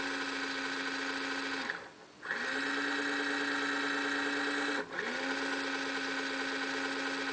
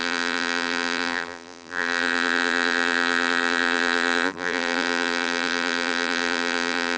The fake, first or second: second